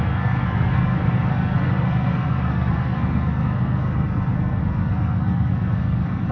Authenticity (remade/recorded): remade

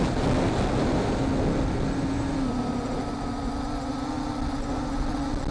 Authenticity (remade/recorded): recorded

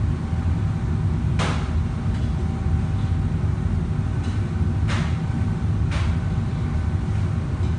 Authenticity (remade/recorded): recorded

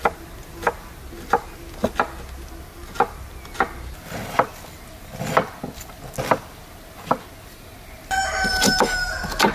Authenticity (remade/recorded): recorded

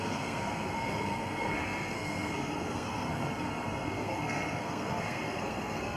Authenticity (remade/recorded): remade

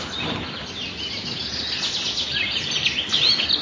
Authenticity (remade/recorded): recorded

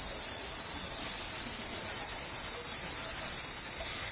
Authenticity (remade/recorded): recorded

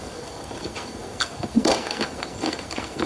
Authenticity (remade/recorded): remade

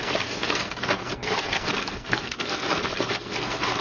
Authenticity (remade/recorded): remade